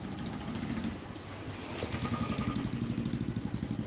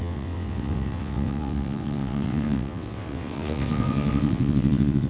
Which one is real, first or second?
first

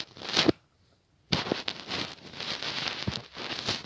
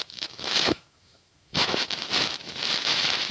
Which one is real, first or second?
first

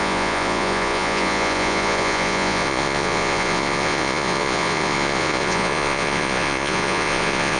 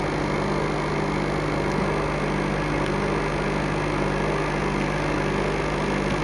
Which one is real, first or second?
second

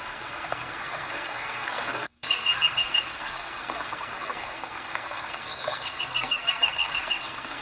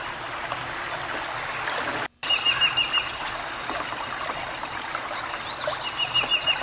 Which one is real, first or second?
second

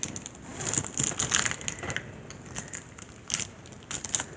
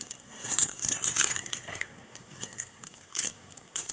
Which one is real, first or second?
first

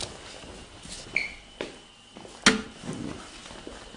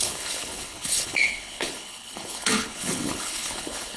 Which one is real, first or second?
first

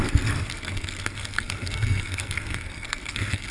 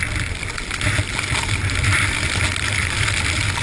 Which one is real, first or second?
second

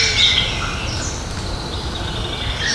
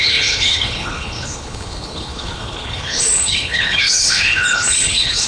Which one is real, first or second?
first